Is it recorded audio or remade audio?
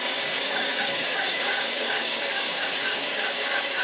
remade